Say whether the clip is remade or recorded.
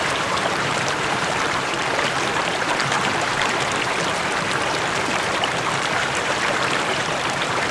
remade